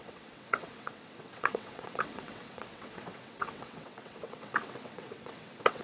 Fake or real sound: fake